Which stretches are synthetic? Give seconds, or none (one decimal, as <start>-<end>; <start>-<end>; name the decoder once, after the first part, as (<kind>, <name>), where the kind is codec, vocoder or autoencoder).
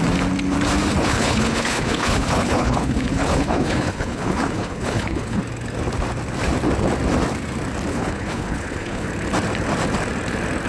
0.9-5.4 (codec, HILCodec); 7.9-9.1